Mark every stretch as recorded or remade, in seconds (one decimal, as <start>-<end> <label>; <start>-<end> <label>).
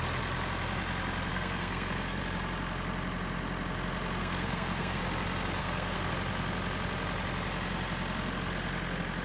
0.0-1.3 recorded; 1.3-2.2 remade; 2.2-4.2 recorded; 4.2-5.0 remade; 5.0-5.6 recorded; 5.6-6.1 remade; 6.1-9.2 recorded